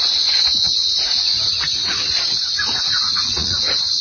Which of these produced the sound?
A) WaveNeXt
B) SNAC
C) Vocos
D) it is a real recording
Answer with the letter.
C